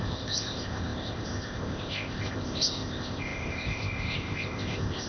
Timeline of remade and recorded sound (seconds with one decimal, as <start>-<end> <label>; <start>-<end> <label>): 0.0-5.1 remade